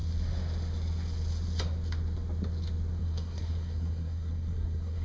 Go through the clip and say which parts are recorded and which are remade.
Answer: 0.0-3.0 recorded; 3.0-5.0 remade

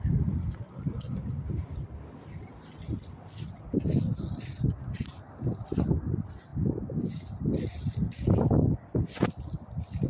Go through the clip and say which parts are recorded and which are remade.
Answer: 0.0-10.1 recorded

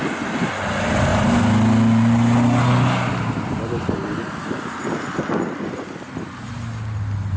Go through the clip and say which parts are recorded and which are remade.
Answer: 0.0-7.4 recorded